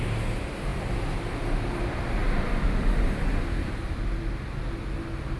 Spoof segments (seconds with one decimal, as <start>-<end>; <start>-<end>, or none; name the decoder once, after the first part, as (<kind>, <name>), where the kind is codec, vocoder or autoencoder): none